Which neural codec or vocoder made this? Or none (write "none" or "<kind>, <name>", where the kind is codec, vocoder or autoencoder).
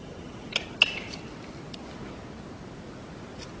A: none